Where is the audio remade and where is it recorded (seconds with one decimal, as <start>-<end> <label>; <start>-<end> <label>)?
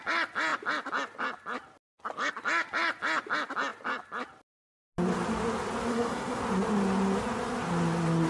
0.0-5.9 recorded; 5.9-6.4 remade; 6.4-8.3 recorded